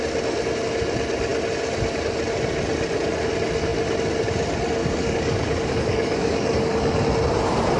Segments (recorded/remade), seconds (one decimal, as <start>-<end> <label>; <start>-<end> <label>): 0.0-4.8 recorded; 4.8-7.0 remade; 7.0-7.8 recorded